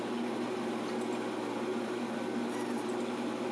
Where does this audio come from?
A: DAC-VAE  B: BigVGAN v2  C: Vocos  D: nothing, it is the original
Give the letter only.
D